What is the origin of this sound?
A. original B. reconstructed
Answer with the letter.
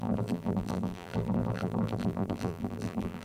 B